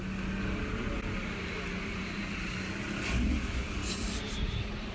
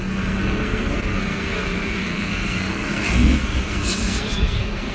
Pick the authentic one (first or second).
first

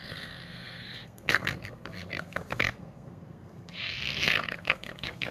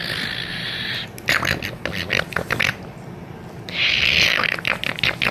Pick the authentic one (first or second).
second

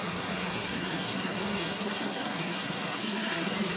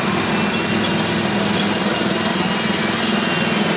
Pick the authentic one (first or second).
second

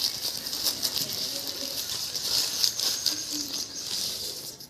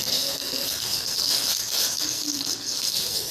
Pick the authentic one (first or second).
first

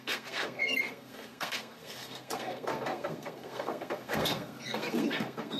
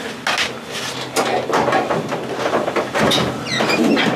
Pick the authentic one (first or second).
second